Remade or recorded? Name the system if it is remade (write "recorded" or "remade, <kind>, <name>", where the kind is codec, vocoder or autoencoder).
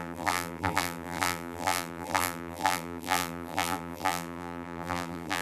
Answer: remade, vocoder, BigVGAN v2